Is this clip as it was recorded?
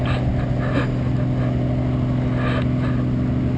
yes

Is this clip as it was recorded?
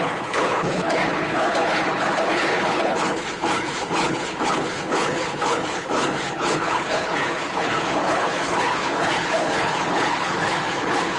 no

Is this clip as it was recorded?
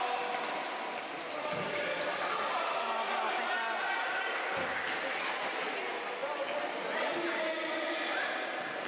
yes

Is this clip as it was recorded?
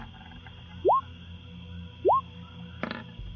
yes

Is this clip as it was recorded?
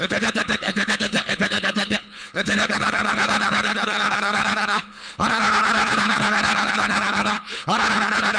no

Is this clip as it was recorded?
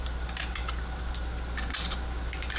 yes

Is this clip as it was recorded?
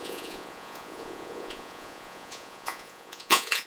no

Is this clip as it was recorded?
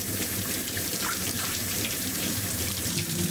no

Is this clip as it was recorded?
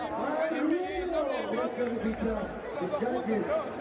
no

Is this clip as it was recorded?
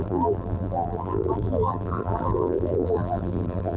no